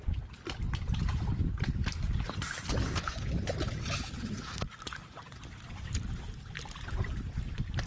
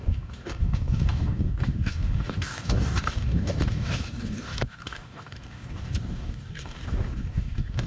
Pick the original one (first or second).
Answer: first